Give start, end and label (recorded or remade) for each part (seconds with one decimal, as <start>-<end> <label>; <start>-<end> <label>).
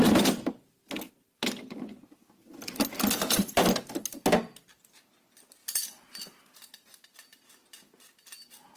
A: 0.0-5.6 recorded; 5.6-6.9 remade; 6.9-8.8 recorded